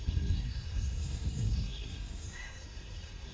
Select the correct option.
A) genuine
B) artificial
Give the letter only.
B